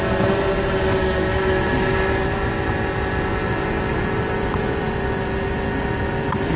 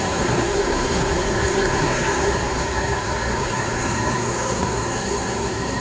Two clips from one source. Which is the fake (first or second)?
second